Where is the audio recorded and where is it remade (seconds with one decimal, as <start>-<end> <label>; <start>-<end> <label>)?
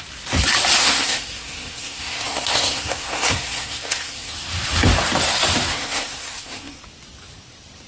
0.0-0.8 recorded; 0.8-4.3 remade; 4.3-5.7 recorded; 5.7-6.8 remade; 6.8-7.9 recorded